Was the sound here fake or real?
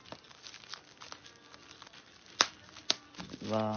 real